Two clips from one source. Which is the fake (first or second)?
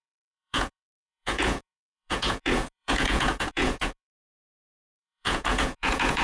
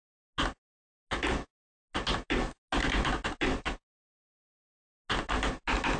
first